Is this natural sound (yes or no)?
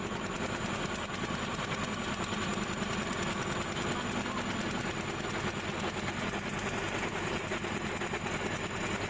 yes